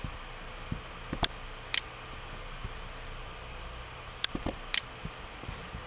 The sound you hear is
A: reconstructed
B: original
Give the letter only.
B